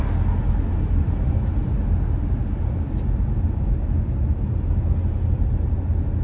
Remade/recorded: recorded